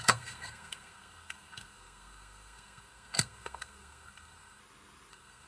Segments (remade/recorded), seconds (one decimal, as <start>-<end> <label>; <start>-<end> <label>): 0.0-4.6 remade; 4.6-5.1 recorded; 5.1-5.5 remade